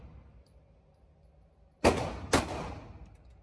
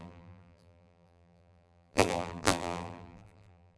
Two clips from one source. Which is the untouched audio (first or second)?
first